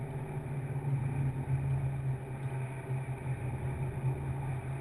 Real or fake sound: real